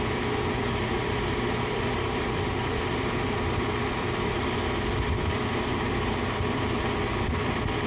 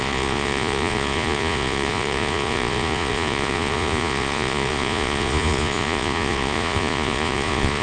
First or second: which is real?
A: first